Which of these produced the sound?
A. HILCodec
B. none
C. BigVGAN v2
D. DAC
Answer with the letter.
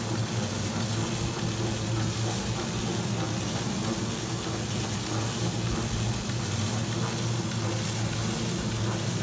B